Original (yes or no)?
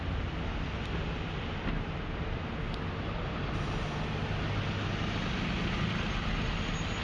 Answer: yes